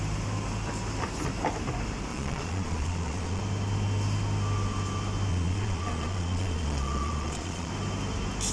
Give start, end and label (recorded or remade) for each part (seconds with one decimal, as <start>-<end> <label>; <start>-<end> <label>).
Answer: 0.0-2.1 recorded; 2.1-3.4 remade; 3.4-5.3 recorded; 5.3-7.7 remade; 7.7-8.5 recorded